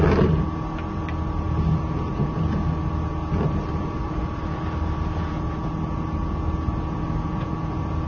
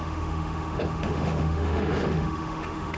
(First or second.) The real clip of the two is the first